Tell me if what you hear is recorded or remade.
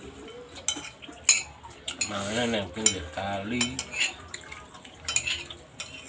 recorded